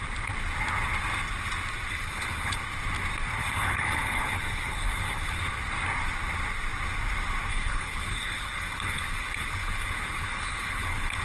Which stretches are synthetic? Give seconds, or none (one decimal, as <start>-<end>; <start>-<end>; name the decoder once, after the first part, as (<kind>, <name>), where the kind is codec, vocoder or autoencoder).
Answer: 1.9-2.6 (codec, HILCodec); 3.4-5.4; 7.5-11.2